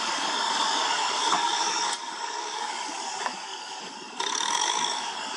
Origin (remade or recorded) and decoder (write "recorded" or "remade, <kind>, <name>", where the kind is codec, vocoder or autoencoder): remade, codec, DAC